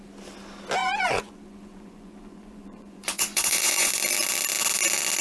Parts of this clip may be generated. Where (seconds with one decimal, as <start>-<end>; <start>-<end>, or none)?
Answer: 0.8-3.9